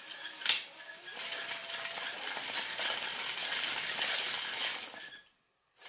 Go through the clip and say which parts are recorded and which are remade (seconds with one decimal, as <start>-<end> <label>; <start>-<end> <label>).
0.0-5.9 recorded